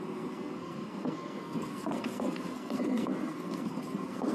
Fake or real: fake